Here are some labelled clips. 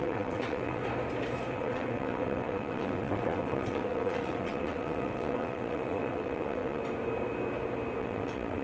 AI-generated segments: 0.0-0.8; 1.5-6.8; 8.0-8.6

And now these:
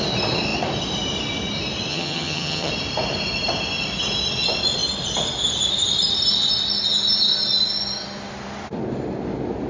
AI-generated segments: 1.9-2.7

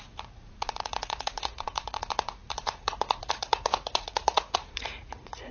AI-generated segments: 0.0-5.5

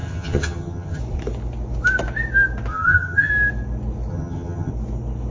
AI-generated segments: 0.0-1.0; 2.7-3.3; 4.1-4.7

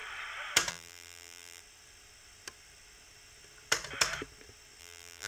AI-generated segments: 0.7-1.6; 4.8-5.3